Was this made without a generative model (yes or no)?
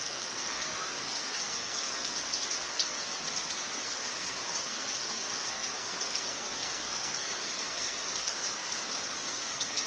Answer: no